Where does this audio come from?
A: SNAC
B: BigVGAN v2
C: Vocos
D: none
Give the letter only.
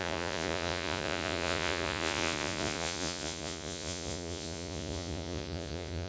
C